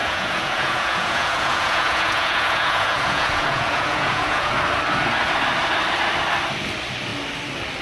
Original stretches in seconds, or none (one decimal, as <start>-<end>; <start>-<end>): 4.5-7.8